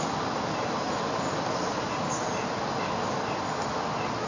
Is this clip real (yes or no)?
yes